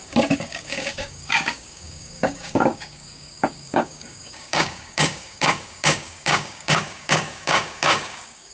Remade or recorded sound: remade